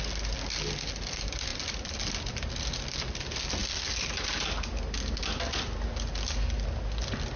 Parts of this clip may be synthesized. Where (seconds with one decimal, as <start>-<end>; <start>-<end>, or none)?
1.5-2.2; 3.6-4.1